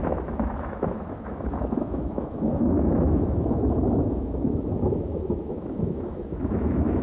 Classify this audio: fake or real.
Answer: fake